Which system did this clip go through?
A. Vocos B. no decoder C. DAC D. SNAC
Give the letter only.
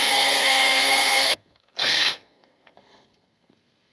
D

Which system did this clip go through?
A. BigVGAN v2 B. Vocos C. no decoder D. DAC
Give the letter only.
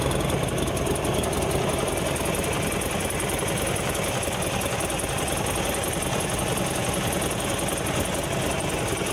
C